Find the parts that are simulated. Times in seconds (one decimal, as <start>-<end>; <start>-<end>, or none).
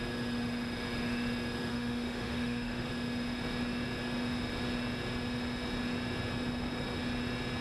1.7-2.9